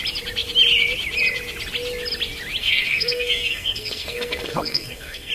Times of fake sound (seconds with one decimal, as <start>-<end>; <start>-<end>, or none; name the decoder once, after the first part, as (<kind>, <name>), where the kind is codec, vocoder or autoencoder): 2.6-5.3 (codec, SNAC)